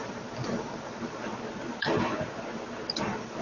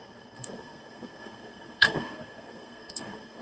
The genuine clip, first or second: first